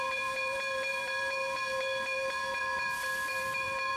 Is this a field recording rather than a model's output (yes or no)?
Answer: no